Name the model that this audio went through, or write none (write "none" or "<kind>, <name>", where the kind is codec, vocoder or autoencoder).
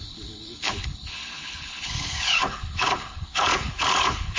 codec, HILCodec